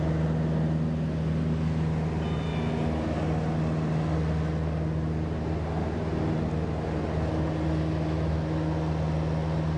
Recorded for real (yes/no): yes